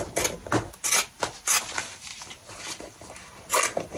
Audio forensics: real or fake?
real